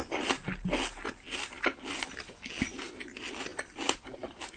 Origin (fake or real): real